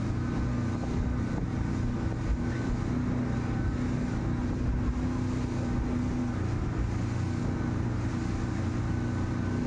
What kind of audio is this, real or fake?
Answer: real